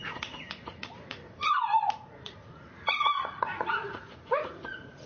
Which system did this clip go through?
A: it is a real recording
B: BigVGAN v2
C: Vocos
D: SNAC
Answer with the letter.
C